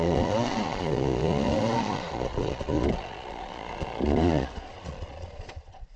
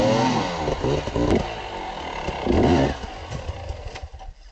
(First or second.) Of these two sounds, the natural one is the second